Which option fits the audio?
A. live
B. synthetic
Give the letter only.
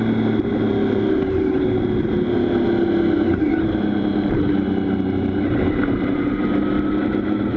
A